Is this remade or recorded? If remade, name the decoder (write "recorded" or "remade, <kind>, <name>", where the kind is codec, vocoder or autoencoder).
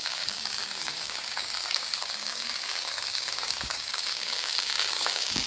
remade, codec, DAC